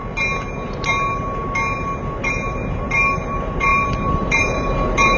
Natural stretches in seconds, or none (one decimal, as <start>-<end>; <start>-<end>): 0.0-2.3